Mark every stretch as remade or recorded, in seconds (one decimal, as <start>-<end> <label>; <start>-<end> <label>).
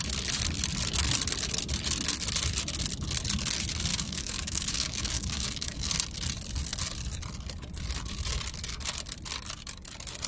0.0-3.9 recorded; 3.9-5.9 remade; 5.9-10.3 recorded